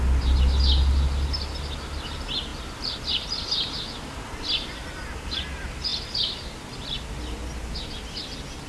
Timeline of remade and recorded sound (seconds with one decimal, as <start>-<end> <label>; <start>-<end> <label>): 0.0-8.7 recorded